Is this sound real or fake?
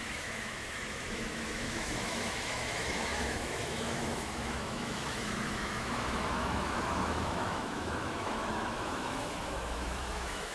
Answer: fake